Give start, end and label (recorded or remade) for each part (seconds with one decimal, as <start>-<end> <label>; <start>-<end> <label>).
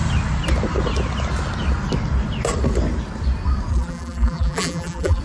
0.0-3.7 recorded; 3.7-5.2 remade